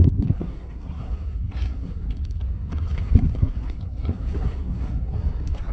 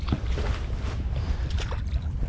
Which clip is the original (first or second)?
second